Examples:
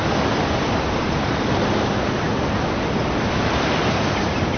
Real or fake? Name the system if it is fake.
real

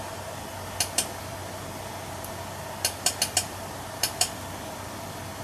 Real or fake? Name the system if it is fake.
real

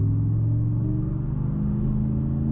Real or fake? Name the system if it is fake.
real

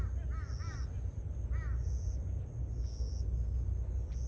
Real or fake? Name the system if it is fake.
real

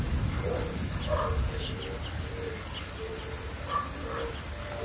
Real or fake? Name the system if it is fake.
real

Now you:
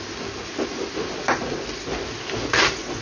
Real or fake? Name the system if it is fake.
real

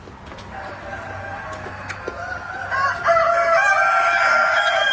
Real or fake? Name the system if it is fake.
real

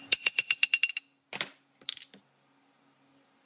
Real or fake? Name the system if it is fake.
real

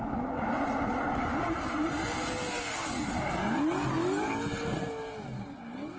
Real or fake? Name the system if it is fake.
real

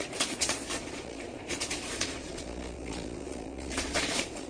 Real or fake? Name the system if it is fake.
fake, vocoder, Vocos